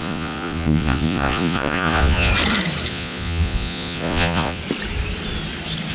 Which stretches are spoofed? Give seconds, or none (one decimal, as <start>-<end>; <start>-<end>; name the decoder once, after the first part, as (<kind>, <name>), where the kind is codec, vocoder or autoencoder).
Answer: 0.0-2.3 (vocoder, Vocos); 2.9-4.6